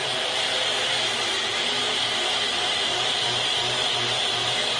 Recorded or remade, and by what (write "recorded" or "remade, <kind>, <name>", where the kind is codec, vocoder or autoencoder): remade, vocoder, BigVGAN v2